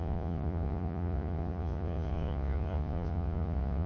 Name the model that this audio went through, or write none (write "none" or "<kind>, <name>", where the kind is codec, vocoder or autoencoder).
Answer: vocoder, Vocos